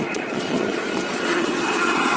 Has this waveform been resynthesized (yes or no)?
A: yes